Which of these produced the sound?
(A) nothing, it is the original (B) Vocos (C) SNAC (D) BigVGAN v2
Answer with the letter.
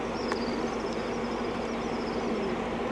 A